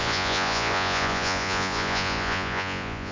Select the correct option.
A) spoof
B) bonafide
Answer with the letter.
A